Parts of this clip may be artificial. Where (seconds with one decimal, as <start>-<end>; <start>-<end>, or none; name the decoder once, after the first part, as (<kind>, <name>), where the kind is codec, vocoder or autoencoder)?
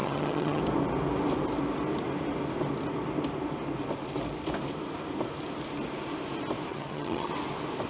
0.0-0.6 (vocoder, HiFi-GAN); 6.7-7.3